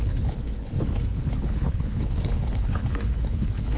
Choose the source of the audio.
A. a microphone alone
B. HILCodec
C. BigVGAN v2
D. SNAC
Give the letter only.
B